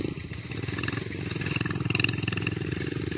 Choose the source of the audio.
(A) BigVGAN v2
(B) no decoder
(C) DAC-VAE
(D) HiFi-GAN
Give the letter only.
B